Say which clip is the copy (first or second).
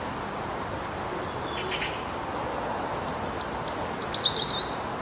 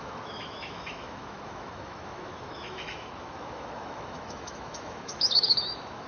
second